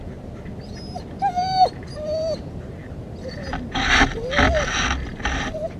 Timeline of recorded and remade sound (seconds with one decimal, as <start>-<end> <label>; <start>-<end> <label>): 0.0-5.8 recorded